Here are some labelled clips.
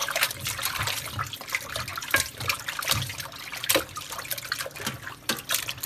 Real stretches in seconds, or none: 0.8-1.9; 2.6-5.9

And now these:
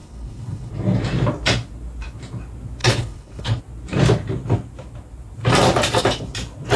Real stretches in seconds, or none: 0.7-2.8; 3.6-6.8

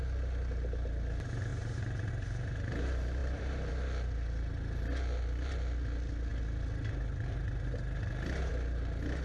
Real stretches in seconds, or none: 0.0-1.5; 2.1-3.2; 3.7-9.2

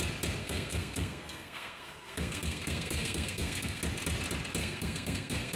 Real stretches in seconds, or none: 0.0-0.4; 3.8-4.6